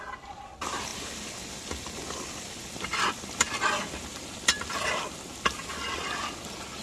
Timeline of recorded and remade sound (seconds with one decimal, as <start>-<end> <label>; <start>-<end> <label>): 0.0-6.8 recorded